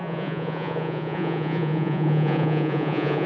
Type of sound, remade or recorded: remade